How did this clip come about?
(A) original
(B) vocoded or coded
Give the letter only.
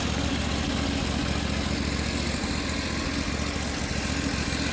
A